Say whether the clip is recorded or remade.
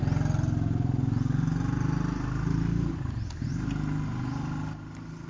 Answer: recorded